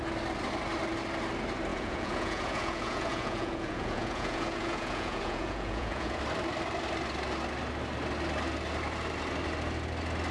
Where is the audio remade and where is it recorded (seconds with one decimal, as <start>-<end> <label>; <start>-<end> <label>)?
0.0-1.7 recorded; 1.7-6.2 remade; 6.2-10.3 recorded